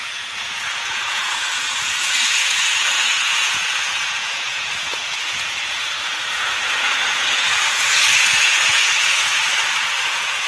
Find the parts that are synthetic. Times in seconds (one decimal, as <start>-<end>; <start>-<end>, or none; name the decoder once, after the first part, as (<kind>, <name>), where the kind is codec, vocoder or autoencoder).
0.0-9.4 (vocoder, Vocos); 10.0-10.5